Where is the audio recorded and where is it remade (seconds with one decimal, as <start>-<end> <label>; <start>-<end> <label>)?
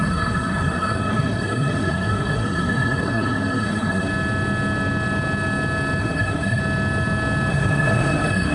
0.0-4.1 remade; 4.1-6.0 recorded; 6.0-6.6 remade; 6.6-7.5 recorded; 7.5-8.5 remade